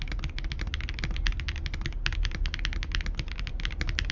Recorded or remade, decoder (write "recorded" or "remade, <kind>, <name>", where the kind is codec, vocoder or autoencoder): recorded